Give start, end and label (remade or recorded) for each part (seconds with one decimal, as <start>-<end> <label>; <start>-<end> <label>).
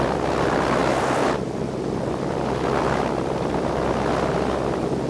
0.0-5.1 recorded